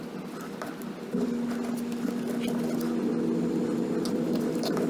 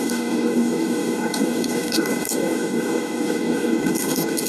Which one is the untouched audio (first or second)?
first